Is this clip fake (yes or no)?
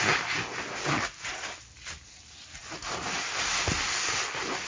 no